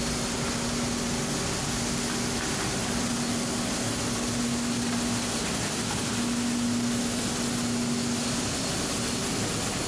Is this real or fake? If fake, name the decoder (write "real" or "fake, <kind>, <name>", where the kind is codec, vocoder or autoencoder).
real